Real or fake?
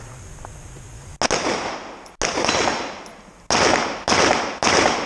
real